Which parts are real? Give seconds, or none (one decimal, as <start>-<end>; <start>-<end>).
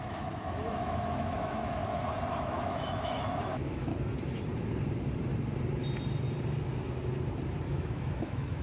1.8-2.3; 3.9-7.7